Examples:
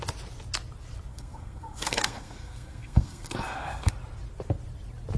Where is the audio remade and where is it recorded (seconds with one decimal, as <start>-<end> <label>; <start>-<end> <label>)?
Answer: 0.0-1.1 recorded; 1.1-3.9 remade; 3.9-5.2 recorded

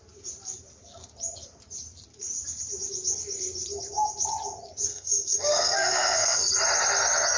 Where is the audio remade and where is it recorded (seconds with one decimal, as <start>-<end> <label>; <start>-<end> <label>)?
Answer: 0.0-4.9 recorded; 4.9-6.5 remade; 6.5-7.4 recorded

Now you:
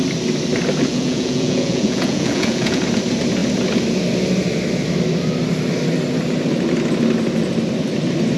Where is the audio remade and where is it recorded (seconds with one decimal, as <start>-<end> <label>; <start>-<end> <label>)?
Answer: 0.0-0.9 recorded; 0.9-2.8 remade; 2.8-8.4 recorded

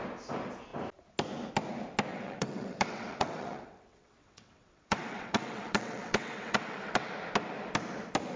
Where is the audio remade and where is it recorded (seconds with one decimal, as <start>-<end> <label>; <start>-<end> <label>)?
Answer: 0.0-2.1 recorded; 2.1-7.1 remade; 7.1-8.4 recorded

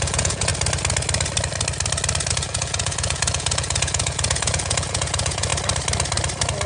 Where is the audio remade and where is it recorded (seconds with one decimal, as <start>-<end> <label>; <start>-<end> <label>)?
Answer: 0.0-0.5 remade; 0.5-2.3 recorded; 2.3-5.5 remade; 5.5-6.7 recorded

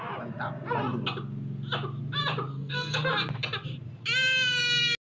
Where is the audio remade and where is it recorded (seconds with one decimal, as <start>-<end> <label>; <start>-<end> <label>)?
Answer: 0.0-2.5 recorded; 2.5-3.1 remade; 3.1-5.0 recorded

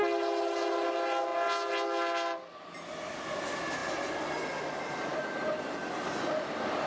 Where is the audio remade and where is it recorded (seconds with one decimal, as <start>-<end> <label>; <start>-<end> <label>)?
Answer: 0.0-6.9 recorded

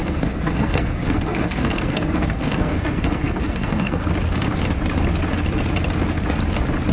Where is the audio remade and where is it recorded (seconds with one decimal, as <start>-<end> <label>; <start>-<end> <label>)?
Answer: 0.0-4.1 remade; 4.1-6.9 recorded